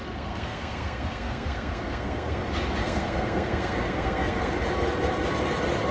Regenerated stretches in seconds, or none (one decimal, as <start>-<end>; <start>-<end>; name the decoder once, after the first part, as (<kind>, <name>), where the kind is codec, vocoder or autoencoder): 0.0-2.4 (codec, SNAC); 2.8-4.5